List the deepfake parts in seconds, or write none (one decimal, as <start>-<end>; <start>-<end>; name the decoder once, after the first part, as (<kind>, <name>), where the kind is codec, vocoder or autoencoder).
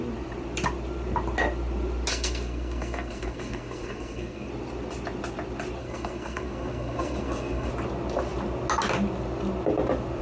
2.1-4.5 (codec, SNAC); 5.8-7.7